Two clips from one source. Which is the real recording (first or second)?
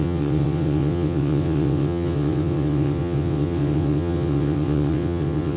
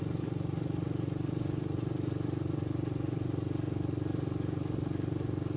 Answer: second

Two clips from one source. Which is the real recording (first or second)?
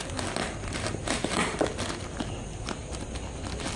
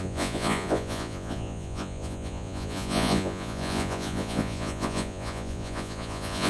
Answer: first